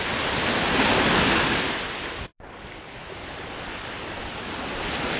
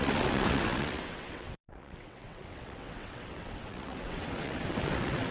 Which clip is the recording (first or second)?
first